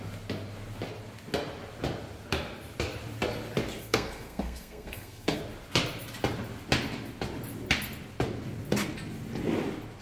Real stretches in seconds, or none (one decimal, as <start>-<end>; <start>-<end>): 0.0-3.8; 5.4-10.0